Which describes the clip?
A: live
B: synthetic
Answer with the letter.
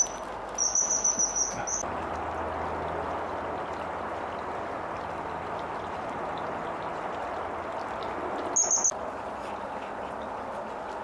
A